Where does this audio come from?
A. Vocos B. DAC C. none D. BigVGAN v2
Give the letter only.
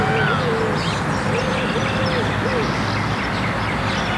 C